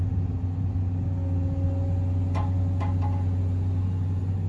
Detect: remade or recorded recorded